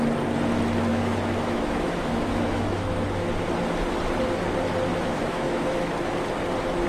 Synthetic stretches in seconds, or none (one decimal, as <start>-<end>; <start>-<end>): 0.9-3.3; 4.9-5.9